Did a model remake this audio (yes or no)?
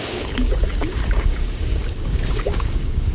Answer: yes